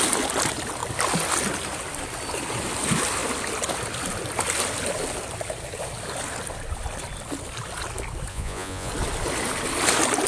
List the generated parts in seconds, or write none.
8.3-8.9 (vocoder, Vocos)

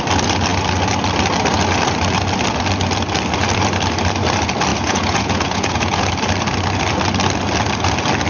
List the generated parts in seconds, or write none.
4.7-6.1 (vocoder, Vocos)

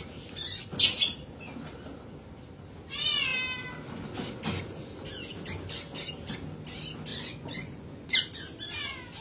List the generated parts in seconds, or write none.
7.1-8.1 (vocoder, Vocos)

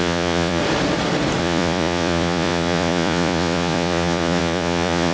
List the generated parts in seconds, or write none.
0.0-0.6 (vocoder, Vocos); 1.4-5.1

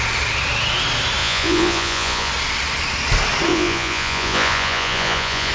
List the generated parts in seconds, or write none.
1.2-2.3 (vocoder, Vocos); 3.5-5.5

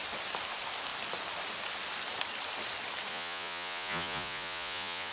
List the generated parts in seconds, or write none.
3.1-5.1 (vocoder, Vocos)

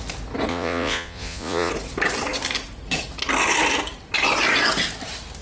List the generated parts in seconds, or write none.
0.5-1.7 (vocoder, Vocos)

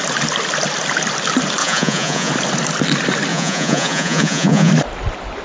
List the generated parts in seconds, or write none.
1.6-2.3 (vocoder, Vocos); 3.3-4.7